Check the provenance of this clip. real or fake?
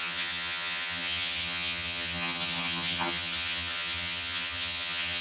fake